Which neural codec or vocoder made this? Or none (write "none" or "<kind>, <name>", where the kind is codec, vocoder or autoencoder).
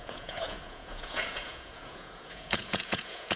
vocoder, Vocos